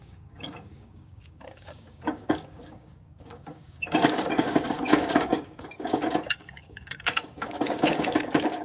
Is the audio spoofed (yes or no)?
yes